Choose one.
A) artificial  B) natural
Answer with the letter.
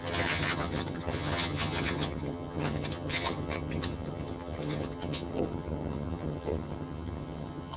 A